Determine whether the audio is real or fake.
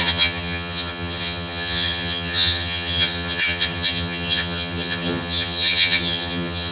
fake